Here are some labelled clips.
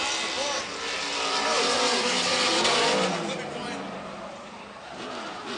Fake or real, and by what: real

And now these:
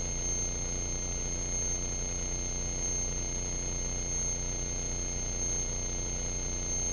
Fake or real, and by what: real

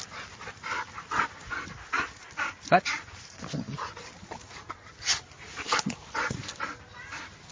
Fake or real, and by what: real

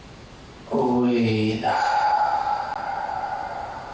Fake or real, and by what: real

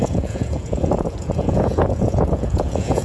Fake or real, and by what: fake, vocoder, Vocos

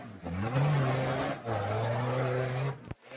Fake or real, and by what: real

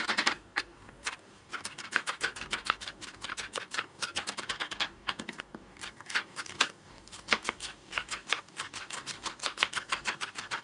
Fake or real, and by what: fake, codec, DAC